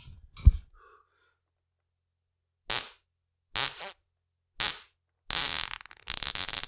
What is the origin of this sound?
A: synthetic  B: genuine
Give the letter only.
B